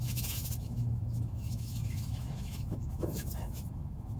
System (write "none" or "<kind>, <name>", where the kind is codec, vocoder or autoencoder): autoencoder, DAC-VAE